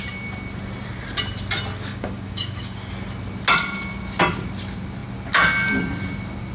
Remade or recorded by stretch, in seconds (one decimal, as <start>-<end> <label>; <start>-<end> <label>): 0.0-1.9 recorded; 1.9-2.9 remade; 2.9-6.5 recorded